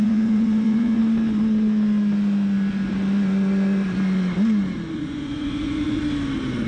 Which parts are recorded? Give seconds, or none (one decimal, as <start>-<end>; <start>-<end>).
1.0-4.9; 6.0-6.7